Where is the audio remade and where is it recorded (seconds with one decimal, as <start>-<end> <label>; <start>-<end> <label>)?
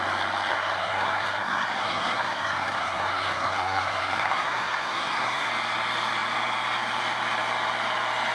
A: 0.0-0.5 recorded; 0.5-5.5 remade; 5.5-8.3 recorded